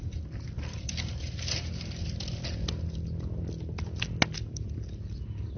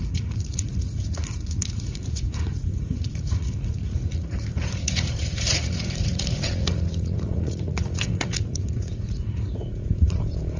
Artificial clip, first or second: second